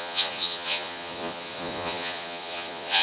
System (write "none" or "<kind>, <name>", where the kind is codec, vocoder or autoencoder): vocoder, Vocos